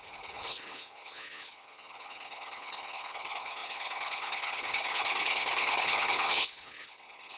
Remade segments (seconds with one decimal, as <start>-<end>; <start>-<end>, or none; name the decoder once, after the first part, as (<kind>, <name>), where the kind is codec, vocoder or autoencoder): 0.0-7.4 (codec, HILCodec)